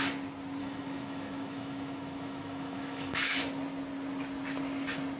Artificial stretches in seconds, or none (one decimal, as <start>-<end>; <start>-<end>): 0.6-3.3